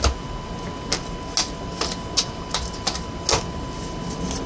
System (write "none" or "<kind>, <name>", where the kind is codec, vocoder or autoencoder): none